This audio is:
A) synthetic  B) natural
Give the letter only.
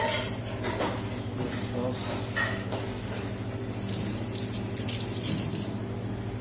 B